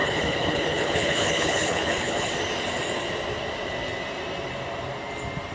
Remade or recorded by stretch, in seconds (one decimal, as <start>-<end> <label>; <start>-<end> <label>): 0.0-2.3 remade; 2.3-5.5 recorded